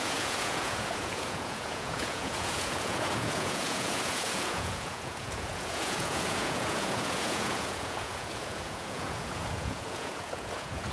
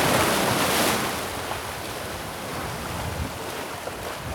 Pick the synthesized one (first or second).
first